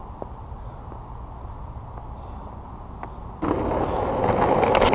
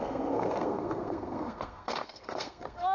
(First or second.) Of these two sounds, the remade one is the second